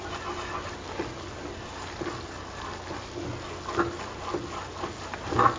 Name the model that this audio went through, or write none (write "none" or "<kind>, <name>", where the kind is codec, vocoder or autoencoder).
none